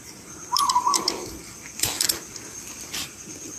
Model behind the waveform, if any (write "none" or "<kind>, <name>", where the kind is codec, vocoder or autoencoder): vocoder, BigVGAN v2